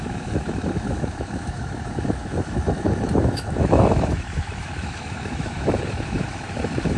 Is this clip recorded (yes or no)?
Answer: no